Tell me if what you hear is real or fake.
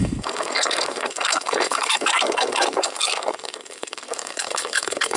fake